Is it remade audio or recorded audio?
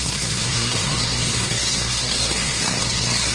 remade